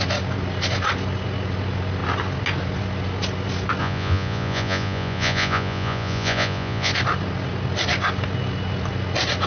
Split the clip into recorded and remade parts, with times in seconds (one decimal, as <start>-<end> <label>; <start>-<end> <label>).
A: 0.0-3.8 recorded; 3.8-6.9 remade; 6.9-9.5 recorded